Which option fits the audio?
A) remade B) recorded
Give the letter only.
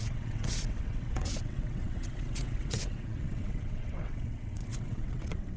A